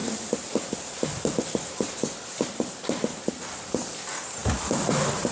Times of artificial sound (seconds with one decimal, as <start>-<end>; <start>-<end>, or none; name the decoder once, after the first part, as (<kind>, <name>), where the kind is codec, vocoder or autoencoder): none